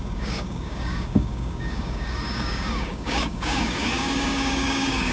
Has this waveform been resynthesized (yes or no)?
yes